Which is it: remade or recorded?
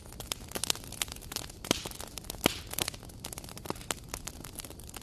recorded